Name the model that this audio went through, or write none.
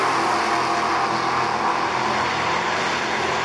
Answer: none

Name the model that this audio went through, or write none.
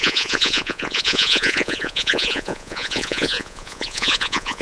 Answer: vocoder, Vocos